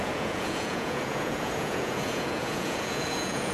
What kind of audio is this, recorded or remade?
remade